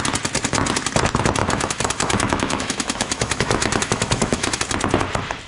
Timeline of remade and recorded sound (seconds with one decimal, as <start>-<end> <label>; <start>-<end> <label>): 0.0-1.4 recorded; 1.4-4.6 remade; 4.6-5.5 recorded